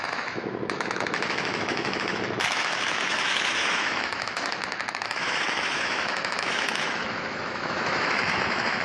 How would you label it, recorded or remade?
remade